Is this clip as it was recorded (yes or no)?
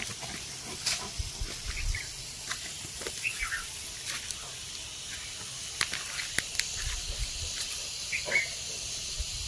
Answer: yes